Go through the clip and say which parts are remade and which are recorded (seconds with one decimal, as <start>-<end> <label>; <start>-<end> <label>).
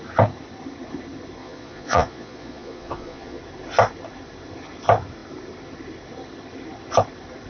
0.0-1.4 recorded; 1.4-3.4 remade; 3.4-7.5 recorded